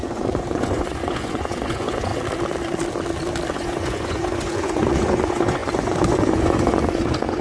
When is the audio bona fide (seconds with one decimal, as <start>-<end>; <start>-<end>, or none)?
2.1-3.5